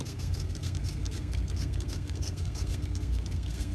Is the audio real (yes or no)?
no